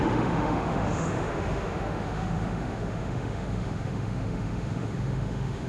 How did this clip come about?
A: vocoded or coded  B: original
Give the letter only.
A